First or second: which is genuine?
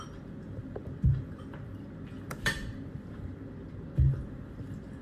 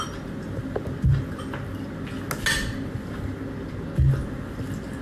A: second